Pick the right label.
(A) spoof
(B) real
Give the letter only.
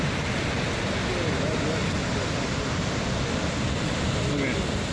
B